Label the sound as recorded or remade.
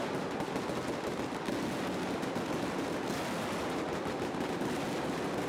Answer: recorded